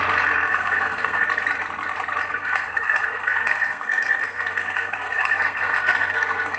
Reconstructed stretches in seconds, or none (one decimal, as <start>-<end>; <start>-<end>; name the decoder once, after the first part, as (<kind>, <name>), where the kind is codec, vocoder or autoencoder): 0.5-1.2 (codec, SNAC); 2.3-6.6